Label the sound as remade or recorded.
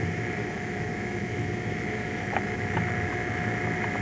remade